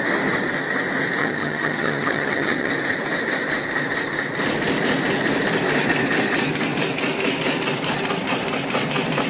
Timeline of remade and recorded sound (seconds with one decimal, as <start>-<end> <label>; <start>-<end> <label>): 0.0-1.2 recorded; 1.2-2.7 remade; 2.7-9.3 recorded